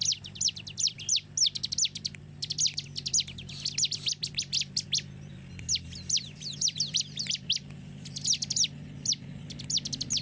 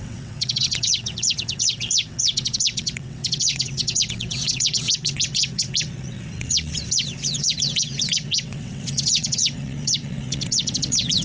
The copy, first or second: second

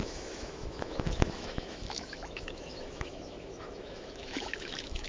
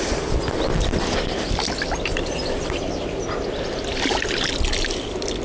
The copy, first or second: first